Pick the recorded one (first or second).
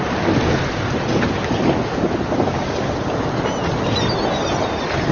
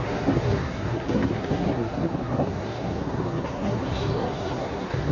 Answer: first